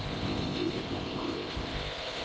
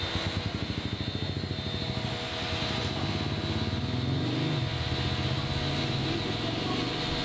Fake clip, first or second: first